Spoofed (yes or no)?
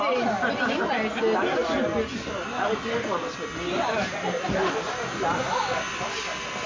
no